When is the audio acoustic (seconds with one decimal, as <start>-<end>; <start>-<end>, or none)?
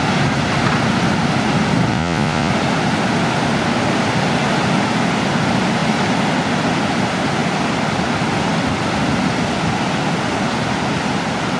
0.0-1.9; 2.5-11.6